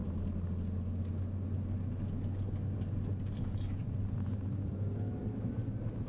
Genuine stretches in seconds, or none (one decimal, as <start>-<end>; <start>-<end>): 0.0-3.7